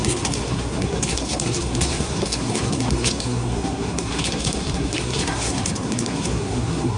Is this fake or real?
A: fake